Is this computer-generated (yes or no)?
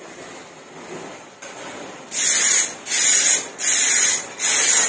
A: no